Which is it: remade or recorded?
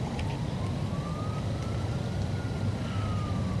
recorded